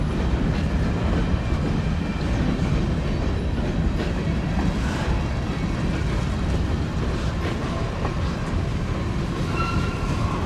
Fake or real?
real